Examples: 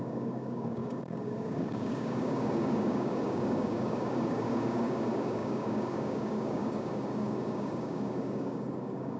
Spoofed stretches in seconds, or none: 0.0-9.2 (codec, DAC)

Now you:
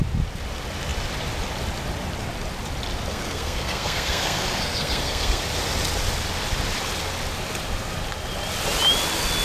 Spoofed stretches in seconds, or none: 3.1-5.4 (codec, SNAC)

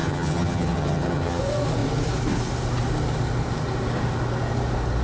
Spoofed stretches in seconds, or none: 0.0-1.4 (vocoder, HiFi-GAN)

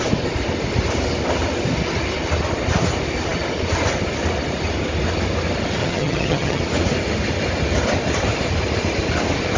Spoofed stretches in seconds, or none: 5.8-6.6 (vocoder, HiFi-GAN)

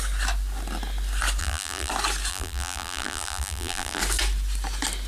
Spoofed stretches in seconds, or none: 1.4-1.9 (vocoder, BigVGAN v2); 2.3-4.0

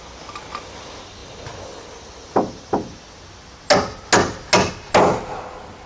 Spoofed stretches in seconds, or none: none